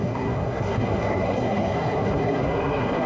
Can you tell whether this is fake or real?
fake